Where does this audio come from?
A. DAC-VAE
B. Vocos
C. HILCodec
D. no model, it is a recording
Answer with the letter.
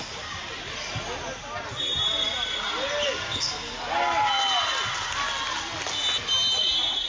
D